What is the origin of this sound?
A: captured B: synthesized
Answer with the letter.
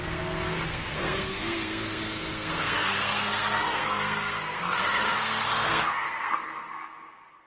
B